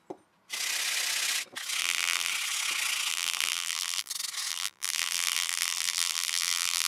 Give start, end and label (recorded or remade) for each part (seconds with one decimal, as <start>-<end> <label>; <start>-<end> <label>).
0.0-1.8 recorded; 1.8-2.3 remade; 2.3-3.1 recorded; 3.1-4.1 remade; 4.1-4.5 recorded; 4.5-6.9 remade